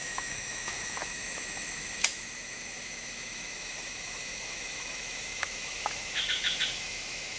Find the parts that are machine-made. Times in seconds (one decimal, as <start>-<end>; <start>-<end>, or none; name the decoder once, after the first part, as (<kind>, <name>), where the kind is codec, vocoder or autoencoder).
0.0-7.4 (autoencoder, DAC-VAE)